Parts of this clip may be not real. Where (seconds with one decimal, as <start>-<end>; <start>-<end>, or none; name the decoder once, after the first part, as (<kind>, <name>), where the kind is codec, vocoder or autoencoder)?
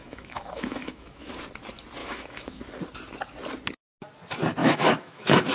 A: 0.0-1.3 (autoencoder, DAC-VAE); 2.0-2.6; 4.6-5.5